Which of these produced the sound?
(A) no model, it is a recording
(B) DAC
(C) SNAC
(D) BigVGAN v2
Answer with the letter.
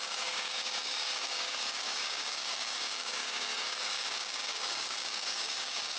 B